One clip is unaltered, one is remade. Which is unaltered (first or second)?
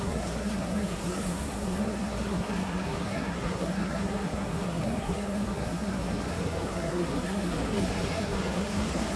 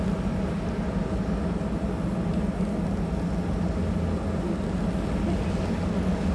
second